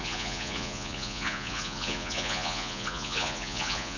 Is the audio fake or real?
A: fake